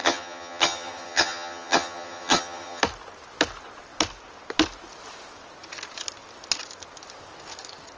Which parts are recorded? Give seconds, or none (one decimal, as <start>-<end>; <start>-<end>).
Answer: 2.8-8.0

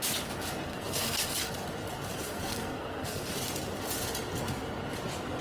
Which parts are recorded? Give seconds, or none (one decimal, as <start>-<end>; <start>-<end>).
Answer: 0.0-0.7; 1.5-2.1; 3.3-5.4

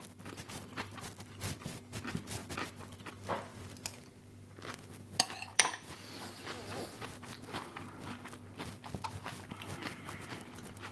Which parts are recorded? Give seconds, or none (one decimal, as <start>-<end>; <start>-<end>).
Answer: 0.0-5.5; 6.1-10.9

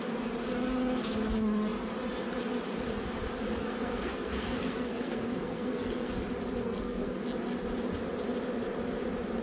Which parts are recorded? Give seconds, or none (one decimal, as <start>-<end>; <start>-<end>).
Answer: 0.0-3.6; 6.1-6.6; 7.2-9.4

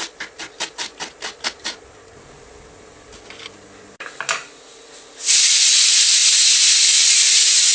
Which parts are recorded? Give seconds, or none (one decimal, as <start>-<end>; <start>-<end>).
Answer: 0.0-7.7